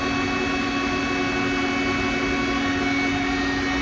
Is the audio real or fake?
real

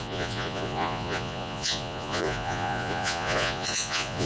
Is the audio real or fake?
fake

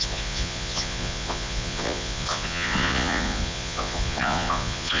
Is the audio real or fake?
fake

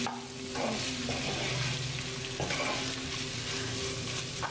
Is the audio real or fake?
real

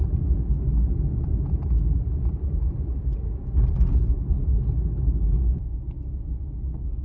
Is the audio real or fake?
real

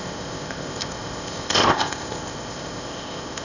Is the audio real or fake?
fake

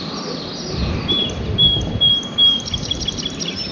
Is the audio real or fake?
fake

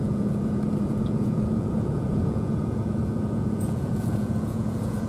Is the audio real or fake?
fake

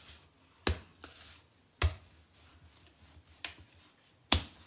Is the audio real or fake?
real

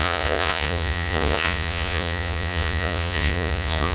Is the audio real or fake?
fake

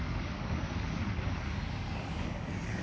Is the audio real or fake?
fake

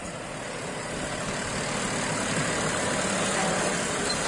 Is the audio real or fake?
real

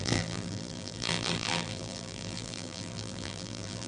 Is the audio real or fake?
fake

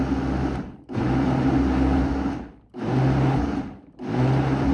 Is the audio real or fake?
real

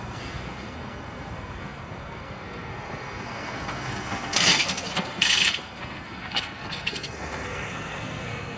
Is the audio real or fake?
fake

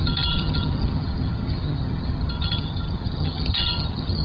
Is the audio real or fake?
fake